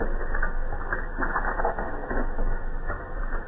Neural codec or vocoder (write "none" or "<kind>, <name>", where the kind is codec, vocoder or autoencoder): none